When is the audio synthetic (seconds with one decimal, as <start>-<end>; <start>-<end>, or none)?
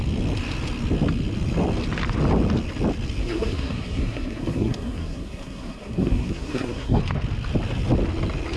3.2-7.0